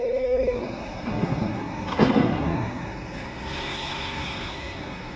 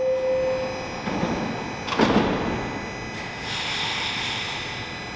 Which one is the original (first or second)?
second